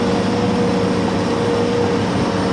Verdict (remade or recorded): recorded